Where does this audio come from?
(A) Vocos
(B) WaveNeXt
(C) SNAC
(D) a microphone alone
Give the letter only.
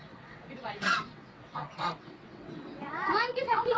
B